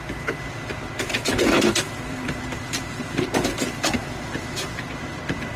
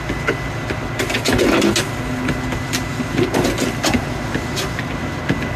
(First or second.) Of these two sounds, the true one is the second